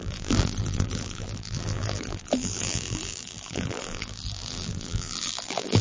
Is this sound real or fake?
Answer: fake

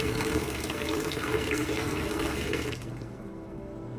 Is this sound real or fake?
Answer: fake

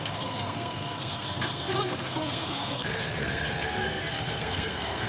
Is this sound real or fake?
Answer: fake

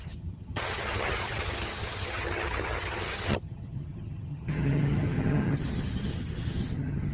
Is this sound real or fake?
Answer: fake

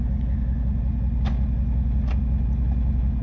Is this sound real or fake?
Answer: real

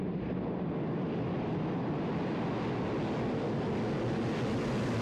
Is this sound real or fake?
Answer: real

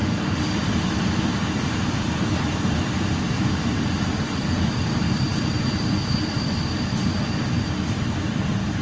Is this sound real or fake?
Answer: fake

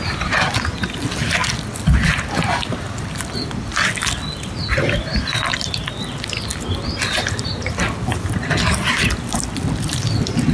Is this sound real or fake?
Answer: real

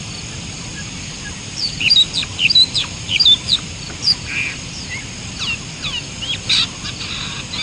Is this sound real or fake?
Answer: real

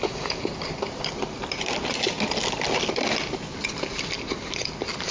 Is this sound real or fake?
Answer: real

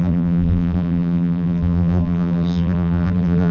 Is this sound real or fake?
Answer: fake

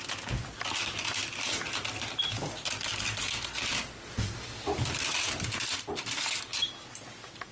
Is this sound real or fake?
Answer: real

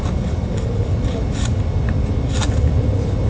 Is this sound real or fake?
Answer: real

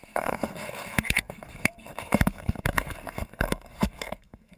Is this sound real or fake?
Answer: fake